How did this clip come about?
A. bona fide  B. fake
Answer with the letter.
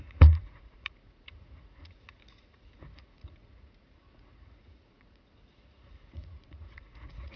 B